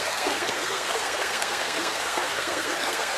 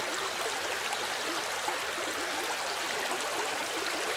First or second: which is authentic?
second